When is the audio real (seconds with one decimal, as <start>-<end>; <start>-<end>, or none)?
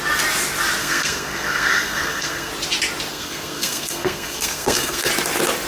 0.0-0.8; 2.5-3.1; 5.1-5.7